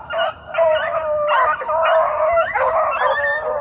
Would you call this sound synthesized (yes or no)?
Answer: no